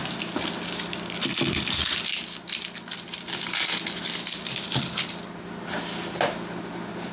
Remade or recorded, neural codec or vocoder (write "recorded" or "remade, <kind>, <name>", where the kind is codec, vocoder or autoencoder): recorded